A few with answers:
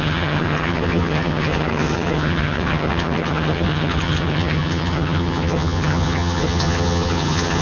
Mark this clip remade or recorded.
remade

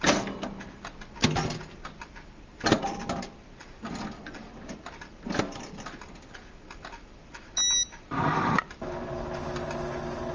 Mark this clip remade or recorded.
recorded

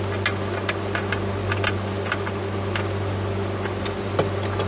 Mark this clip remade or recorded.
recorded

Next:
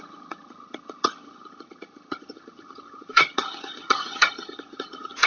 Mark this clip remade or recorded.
remade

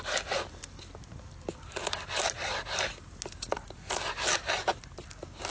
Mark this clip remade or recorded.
recorded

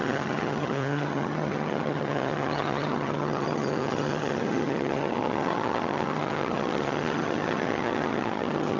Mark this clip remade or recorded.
remade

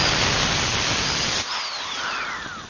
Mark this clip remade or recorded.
recorded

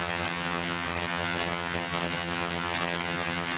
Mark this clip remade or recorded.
remade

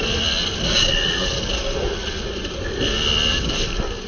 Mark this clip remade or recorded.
recorded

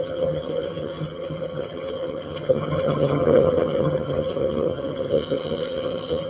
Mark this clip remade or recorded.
remade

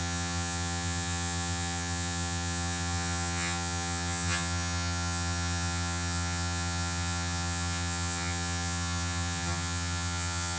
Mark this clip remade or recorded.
remade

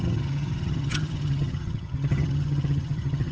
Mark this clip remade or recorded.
remade